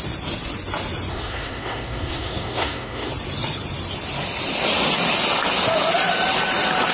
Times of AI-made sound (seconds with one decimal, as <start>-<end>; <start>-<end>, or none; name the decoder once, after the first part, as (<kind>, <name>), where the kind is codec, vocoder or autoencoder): 1.1-3.1 (codec, SNAC)